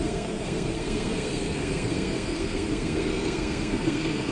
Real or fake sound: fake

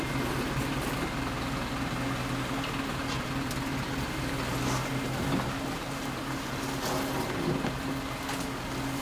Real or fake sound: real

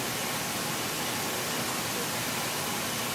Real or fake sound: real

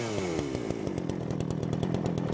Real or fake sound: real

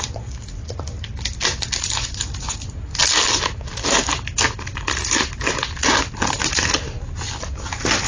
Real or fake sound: real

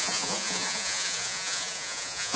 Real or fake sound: fake